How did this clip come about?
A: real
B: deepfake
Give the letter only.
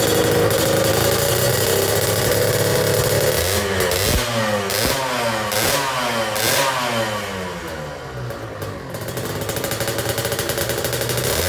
A